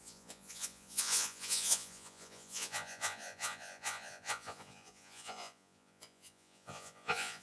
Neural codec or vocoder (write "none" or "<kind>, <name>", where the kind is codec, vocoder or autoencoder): vocoder, Vocos